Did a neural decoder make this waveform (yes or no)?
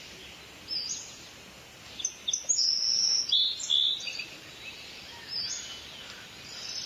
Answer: no